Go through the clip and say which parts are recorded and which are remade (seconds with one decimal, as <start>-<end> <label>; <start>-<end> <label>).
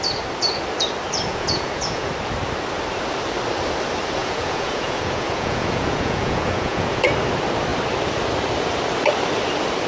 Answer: 0.0-1.3 recorded; 1.3-2.1 remade; 2.1-4.2 recorded; 4.2-7.1 remade; 7.1-9.9 recorded